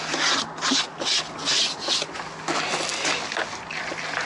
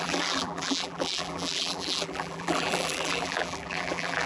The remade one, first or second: second